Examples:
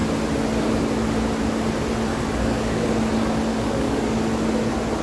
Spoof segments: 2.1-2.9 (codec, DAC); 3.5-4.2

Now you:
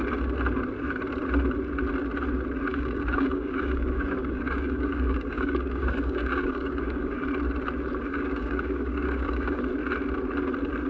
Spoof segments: 2.7-7.2 (codec, DAC); 8.1-9.6

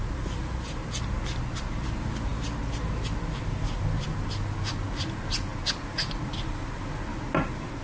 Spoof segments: none

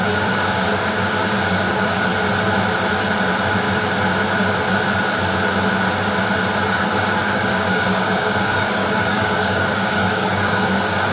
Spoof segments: 0.0-2.1 (codec, DAC); 6.7-11.1

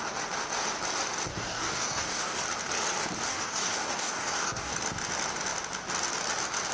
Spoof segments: 1.3-2.4 (codec, DAC); 3.3-4.7

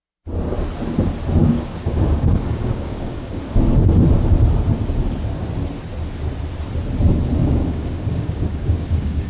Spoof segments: 1.4-3.4 (codec, DAC); 7.4-9.3